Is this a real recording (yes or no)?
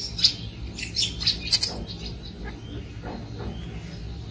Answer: yes